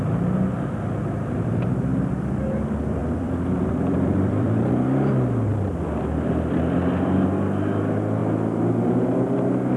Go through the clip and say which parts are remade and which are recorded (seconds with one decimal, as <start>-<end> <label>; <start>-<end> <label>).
0.0-3.0 recorded; 3.0-4.7 remade; 4.7-9.8 recorded